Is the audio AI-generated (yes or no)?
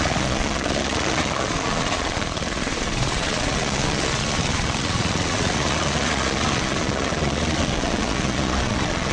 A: yes